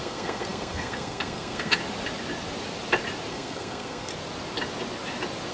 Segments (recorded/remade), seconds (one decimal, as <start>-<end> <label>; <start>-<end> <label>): 0.0-1.8 remade; 1.8-3.3 recorded; 3.3-4.1 remade; 4.1-5.5 recorded